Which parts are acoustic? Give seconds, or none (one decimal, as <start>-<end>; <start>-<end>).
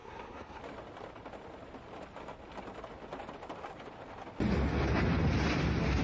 0.6-6.0